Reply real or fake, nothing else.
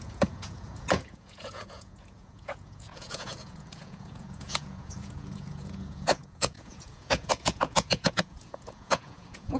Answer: fake